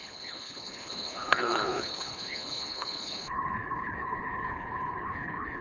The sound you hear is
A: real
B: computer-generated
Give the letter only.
B